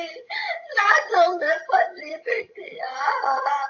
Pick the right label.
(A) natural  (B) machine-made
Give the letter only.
B